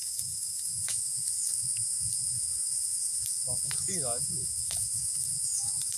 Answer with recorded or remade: remade